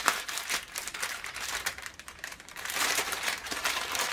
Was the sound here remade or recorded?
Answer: remade